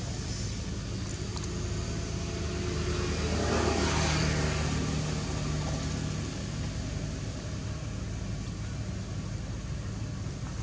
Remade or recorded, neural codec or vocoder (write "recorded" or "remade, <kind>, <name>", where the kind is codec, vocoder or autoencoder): recorded